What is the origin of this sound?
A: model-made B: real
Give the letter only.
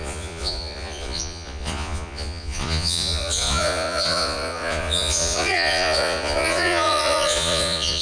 A